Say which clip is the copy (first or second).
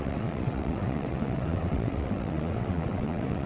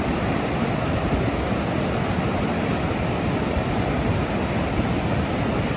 first